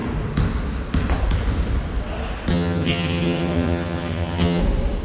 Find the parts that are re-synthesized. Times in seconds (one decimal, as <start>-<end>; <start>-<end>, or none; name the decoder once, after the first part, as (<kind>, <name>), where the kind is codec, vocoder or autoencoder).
2.5-4.6 (vocoder, HiFi-GAN)